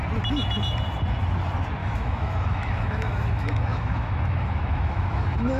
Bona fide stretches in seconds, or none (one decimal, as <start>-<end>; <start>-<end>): 0.0-1.8